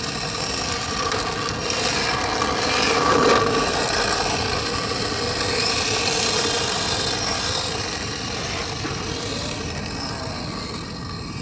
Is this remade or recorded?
recorded